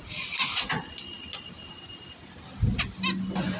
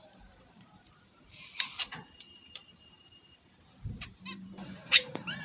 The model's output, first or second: second